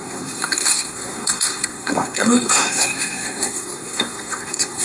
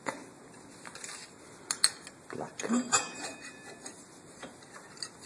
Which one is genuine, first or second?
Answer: second